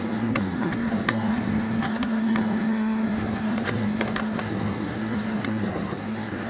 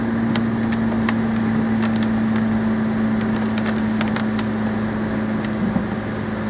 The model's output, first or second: first